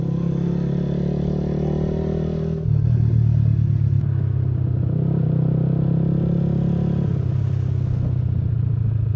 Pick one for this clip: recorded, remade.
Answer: recorded